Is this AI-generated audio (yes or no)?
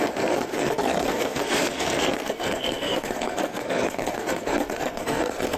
yes